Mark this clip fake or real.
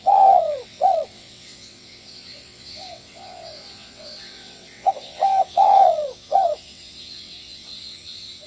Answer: fake